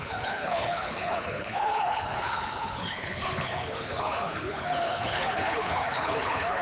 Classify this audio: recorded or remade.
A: remade